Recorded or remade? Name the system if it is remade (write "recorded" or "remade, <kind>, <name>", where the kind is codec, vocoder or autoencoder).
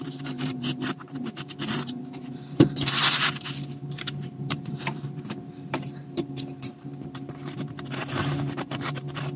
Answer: remade, vocoder, BigVGAN v2